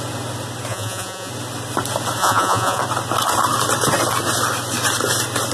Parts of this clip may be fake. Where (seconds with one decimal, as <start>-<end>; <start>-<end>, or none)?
0.7-1.3; 2.2-2.8

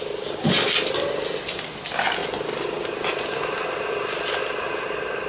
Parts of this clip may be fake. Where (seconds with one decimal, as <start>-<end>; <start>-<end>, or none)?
none

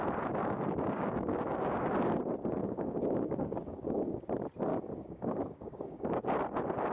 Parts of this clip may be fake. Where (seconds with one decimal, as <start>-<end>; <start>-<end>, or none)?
0.4-2.2; 2.6-4.0; 4.7-6.2

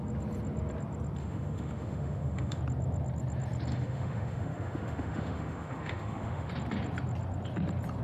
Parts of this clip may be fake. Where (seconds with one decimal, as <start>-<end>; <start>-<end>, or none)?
1.2-2.6; 3.7-6.5

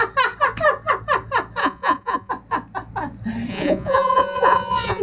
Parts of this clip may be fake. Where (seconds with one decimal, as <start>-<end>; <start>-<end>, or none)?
1.6-2.3; 3.5-5.0